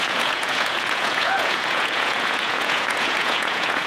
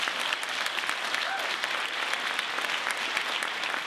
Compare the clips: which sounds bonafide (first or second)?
second